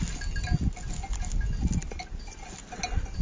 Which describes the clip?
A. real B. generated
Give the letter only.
A